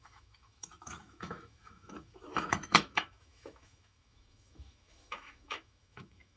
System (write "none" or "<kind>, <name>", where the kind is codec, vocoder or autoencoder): autoencoder, DAC-VAE